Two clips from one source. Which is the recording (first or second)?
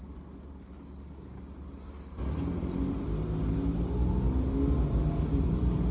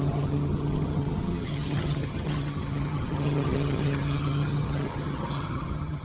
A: first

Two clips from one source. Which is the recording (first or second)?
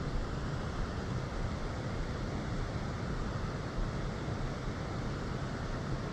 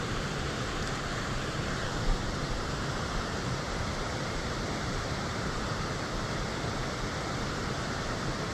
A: first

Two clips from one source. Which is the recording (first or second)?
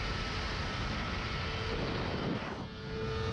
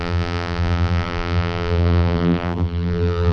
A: first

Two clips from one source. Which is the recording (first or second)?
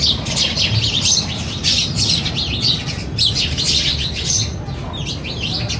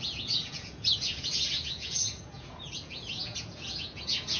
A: first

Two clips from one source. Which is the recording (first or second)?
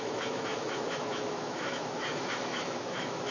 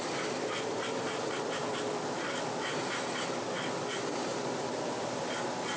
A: second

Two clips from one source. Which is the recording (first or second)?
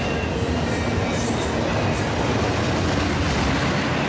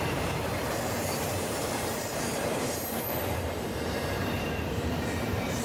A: first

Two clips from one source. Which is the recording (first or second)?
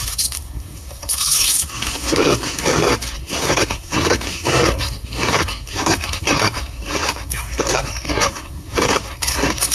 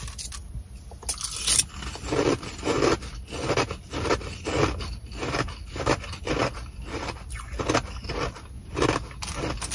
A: second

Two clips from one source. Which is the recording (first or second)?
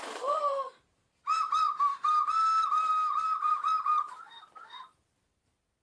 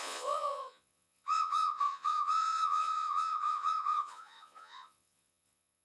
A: first